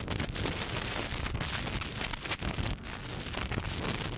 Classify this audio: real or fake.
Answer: real